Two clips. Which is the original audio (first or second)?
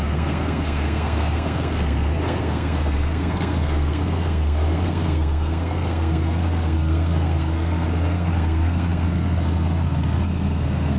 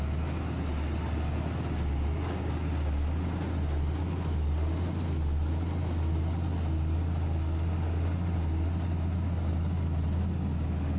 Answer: second